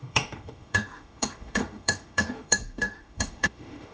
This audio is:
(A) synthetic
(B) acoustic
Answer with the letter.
A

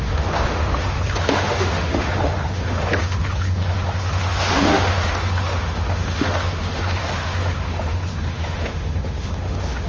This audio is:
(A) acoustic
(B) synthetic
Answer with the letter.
B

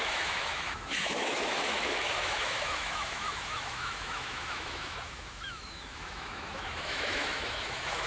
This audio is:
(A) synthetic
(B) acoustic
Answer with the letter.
A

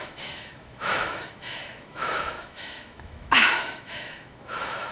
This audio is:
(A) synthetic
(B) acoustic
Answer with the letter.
A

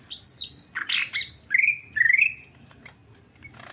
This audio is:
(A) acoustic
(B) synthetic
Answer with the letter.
A